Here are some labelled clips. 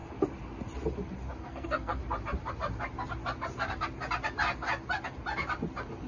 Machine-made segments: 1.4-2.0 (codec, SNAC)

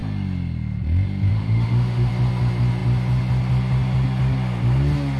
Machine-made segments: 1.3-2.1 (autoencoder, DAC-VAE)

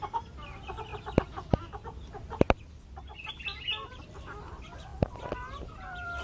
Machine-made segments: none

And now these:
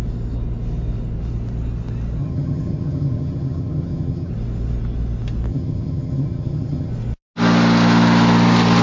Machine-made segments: 2.2-4.3 (vocoder, HiFi-GAN); 5.5-6.9

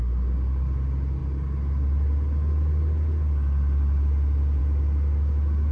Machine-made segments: none

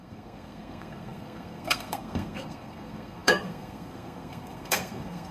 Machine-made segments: 0.0-5.3 (codec, SNAC)

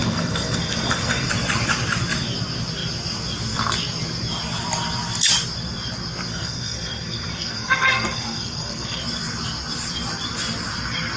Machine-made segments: 0.0-1.3 (codec, SNAC); 6.3-9.0